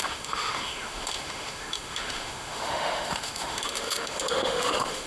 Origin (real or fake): fake